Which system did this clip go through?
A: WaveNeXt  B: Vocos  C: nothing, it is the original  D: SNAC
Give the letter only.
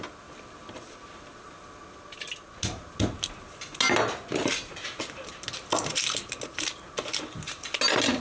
C